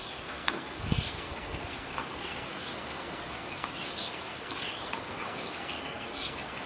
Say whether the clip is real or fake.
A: fake